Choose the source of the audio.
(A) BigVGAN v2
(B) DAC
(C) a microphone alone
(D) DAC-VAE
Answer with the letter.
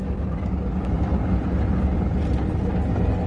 C